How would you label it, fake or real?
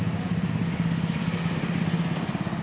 real